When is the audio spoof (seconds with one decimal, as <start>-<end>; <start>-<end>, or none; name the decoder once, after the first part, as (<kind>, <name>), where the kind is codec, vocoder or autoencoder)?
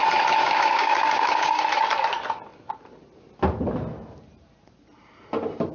0.4-1.6 (codec, DAC)